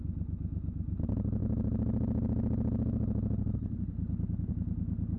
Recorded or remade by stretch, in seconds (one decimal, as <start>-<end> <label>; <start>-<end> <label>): 0.0-5.2 recorded